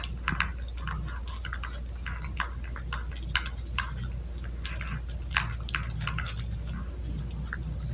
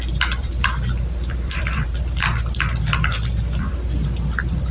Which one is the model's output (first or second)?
second